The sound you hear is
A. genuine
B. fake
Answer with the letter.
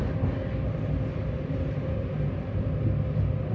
A